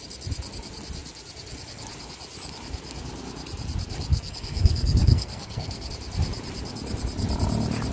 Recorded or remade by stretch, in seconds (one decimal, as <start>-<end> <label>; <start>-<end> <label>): 0.0-4.1 recorded; 4.1-5.9 remade; 5.9-7.9 recorded